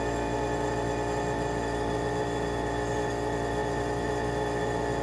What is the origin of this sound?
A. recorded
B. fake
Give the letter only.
A